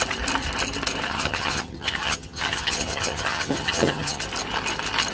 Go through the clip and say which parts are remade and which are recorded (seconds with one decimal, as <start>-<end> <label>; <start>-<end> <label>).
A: 0.0-1.1 recorded; 1.1-4.2 remade; 4.2-5.1 recorded